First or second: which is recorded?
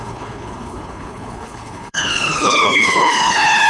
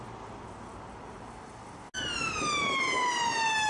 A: second